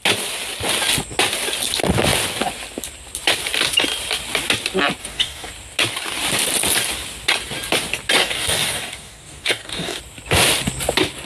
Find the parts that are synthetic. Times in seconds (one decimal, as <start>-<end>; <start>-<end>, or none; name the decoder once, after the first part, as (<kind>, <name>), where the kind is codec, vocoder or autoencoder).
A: 5.0-5.5 (codec, DAC); 8.2-10.0